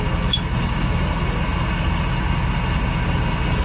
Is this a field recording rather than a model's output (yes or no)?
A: yes